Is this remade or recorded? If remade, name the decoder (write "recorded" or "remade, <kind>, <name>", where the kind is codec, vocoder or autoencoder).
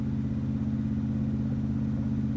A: recorded